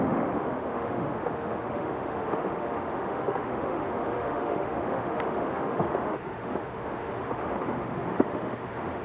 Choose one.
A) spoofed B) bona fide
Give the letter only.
A